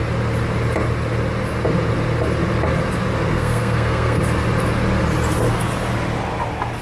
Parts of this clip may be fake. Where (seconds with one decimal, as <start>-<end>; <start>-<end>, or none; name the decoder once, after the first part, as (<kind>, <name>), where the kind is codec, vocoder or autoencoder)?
3.3-4.2 (codec, SNAC)